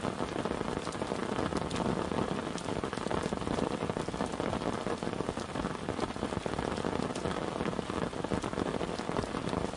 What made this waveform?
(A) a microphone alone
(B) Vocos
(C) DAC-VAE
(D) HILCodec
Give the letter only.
A